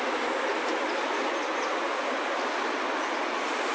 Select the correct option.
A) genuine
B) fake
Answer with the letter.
A